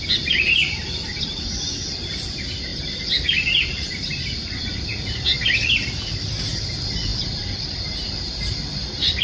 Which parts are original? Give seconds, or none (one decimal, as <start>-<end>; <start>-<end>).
none

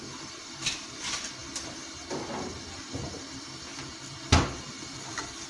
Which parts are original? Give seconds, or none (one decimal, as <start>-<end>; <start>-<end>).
0.0-5.5